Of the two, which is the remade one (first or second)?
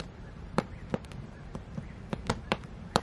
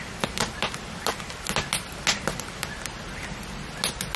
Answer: first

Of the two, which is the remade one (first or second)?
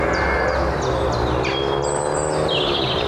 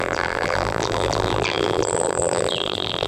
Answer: second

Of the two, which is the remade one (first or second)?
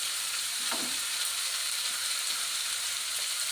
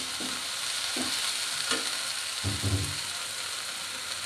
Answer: first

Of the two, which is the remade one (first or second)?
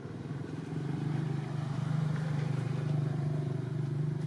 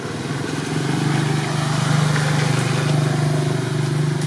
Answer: first